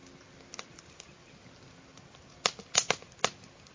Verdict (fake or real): real